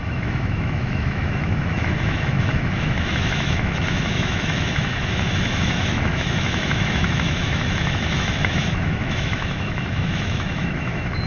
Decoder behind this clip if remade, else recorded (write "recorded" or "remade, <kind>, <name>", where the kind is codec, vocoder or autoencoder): remade, autoencoder, DAC-VAE